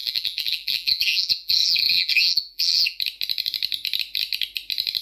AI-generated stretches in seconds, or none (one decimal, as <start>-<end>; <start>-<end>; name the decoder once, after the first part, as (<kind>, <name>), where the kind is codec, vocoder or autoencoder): 0.0-3.0 (vocoder, BigVGAN v2)